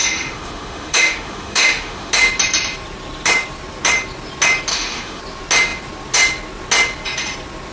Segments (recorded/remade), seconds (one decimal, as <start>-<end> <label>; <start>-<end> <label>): 0.0-2.1 remade; 2.1-4.7 recorded; 4.7-5.2 remade; 5.2-7.7 recorded